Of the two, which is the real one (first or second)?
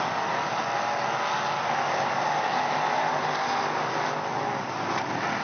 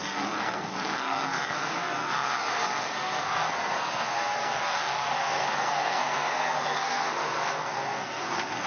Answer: first